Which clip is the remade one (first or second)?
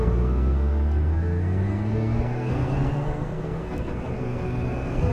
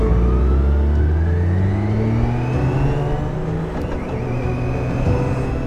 first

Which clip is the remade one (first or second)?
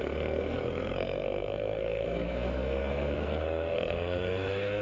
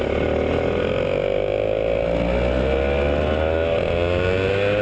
first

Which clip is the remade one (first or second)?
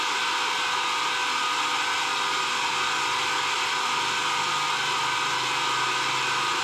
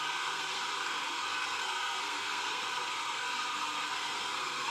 second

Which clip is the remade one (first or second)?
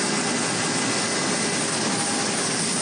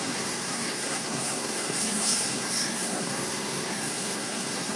second